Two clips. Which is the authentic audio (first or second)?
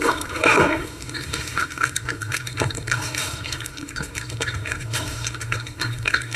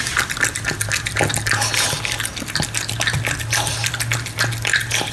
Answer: second